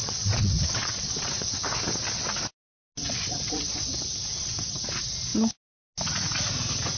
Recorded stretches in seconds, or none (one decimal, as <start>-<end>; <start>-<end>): 1.5-3.0; 3.9-4.3; 4.8-7.0